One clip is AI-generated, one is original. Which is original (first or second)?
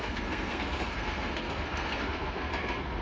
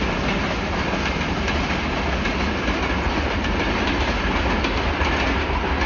second